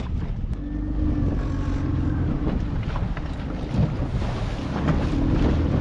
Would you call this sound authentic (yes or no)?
yes